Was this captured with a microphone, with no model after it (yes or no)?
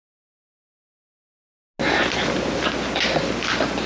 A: yes